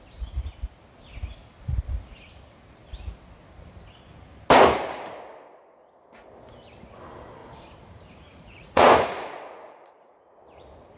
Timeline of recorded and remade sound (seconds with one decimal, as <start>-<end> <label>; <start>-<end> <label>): 0.0-7.4 recorded; 7.4-10.4 remade; 10.4-11.0 recorded